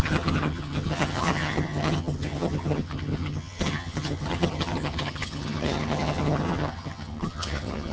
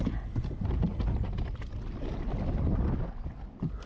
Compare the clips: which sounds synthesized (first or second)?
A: first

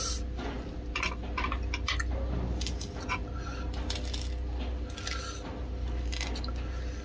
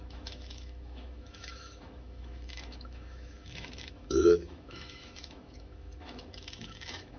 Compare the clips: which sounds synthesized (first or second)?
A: second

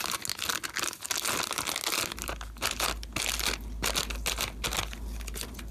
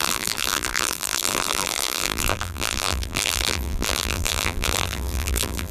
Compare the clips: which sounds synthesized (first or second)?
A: second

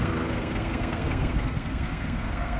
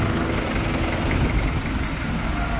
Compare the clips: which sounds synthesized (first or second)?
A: first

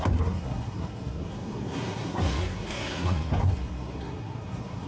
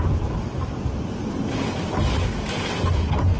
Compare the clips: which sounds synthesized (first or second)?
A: first